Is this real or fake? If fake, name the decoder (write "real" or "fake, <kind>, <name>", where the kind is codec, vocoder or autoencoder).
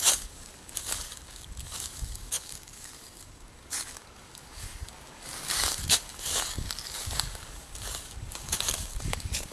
fake, codec, DAC